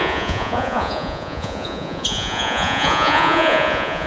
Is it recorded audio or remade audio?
remade